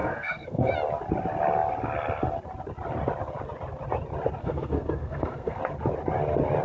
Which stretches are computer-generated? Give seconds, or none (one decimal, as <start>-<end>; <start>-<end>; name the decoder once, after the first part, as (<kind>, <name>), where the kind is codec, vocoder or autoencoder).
0.0-0.7 (codec, SNAC); 4.4-5.6